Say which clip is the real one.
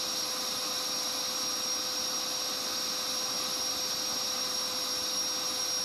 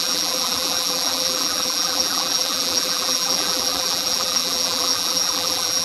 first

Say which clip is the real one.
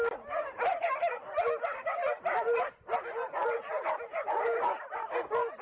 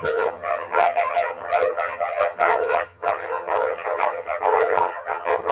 first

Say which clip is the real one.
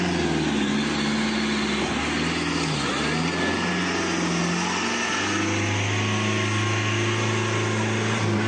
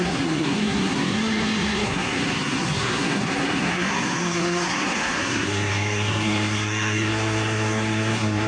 first